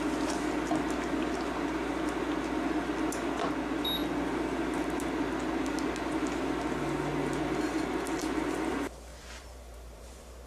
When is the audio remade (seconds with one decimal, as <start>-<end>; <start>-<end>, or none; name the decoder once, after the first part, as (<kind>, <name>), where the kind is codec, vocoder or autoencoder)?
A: 9.1-10.5 (vocoder, BigVGAN v2)